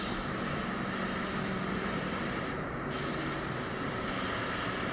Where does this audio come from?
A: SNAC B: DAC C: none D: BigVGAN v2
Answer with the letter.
C